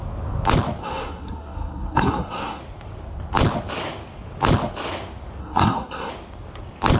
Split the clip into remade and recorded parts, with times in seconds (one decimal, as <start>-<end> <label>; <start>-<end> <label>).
0.0-0.8 recorded; 0.8-2.6 remade; 2.6-5.4 recorded; 5.4-6.1 remade; 6.1-7.0 recorded